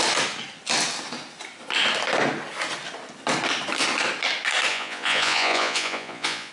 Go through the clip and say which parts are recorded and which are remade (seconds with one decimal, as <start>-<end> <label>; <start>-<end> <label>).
0.0-4.7 recorded; 4.7-6.5 remade